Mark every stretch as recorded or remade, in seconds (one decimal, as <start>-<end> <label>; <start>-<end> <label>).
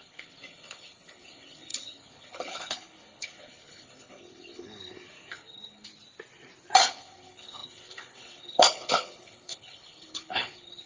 0.0-5.9 remade; 5.9-6.9 recorded; 6.9-10.9 remade